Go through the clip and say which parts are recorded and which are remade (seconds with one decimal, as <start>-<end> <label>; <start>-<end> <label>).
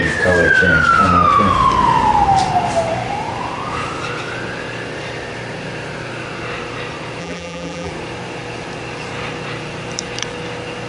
0.0-7.2 recorded; 7.2-7.9 remade; 7.9-10.9 recorded